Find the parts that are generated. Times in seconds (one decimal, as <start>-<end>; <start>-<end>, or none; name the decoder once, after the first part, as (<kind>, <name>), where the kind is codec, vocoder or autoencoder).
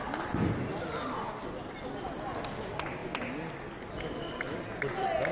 none